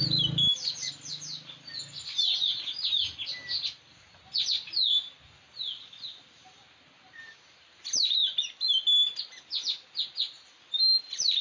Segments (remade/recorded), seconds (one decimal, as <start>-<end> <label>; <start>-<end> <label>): 0.0-1.1 remade; 1.1-11.4 recorded